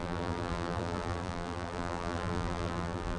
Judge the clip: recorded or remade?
remade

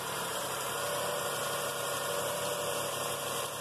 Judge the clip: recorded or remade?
remade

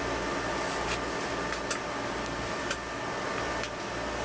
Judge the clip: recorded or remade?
recorded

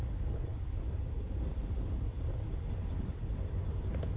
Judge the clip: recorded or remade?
remade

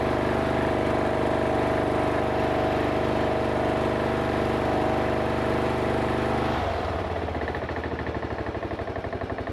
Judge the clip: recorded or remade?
recorded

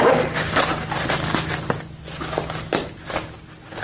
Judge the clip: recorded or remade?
recorded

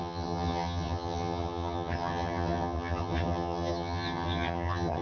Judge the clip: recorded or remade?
remade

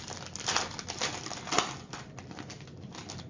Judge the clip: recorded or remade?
recorded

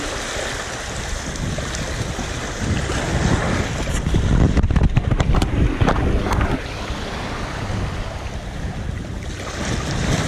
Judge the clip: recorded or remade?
recorded